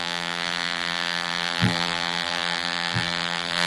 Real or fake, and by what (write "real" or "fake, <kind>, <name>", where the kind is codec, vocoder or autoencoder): fake, vocoder, BigVGAN v2